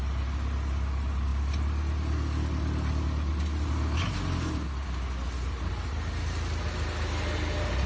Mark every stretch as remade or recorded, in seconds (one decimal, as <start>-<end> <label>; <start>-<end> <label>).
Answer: 0.0-7.9 recorded